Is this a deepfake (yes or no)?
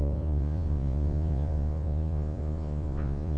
yes